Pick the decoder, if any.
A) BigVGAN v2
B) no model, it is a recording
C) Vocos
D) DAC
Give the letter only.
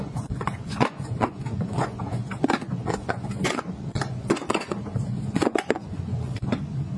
C